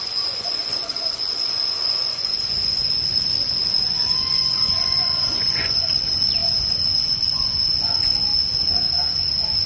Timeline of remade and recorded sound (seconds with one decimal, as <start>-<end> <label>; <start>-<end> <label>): 0.0-8.3 remade; 8.3-9.2 recorded; 9.2-9.7 remade